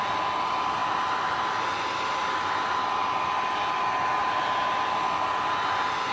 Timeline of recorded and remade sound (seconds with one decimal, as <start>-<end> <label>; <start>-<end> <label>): 0.0-6.1 recorded